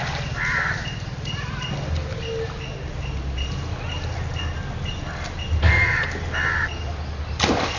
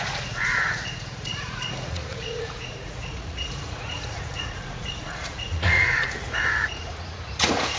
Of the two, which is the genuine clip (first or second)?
first